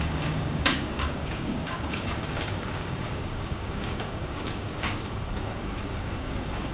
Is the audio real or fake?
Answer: fake